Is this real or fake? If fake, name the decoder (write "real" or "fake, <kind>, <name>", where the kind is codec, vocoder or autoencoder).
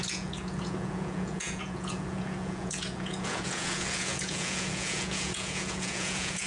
fake, vocoder, Vocos